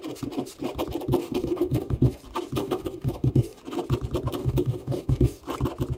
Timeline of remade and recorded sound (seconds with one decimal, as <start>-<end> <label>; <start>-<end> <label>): 0.0-1.2 recorded; 1.2-2.2 remade; 2.2-2.6 recorded; 2.6-3.6 remade; 3.6-4.4 recorded; 4.4-5.4 remade; 5.4-6.0 recorded